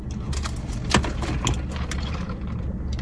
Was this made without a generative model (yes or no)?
yes